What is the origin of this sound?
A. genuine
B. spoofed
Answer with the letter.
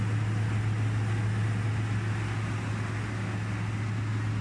A